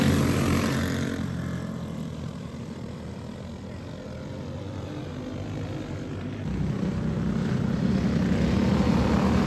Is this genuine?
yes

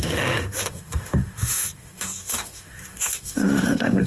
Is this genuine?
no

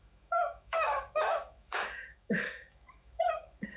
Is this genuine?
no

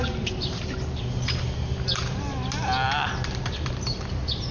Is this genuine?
yes